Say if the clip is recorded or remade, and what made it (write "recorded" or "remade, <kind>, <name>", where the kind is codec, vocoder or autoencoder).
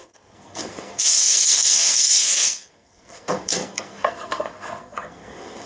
remade, codec, SNAC